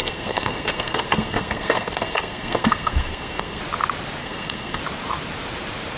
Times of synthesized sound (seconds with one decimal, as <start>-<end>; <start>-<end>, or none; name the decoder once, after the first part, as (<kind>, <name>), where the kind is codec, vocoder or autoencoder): 0.0-3.6 (codec, SNAC); 4.2-4.8